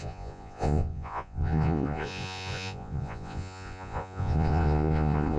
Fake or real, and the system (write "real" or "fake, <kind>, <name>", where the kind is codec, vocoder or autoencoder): fake, vocoder, Vocos